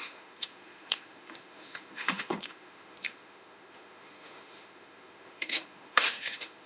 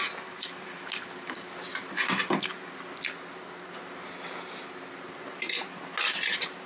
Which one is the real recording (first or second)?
second